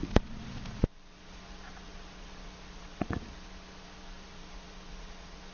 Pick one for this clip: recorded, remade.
remade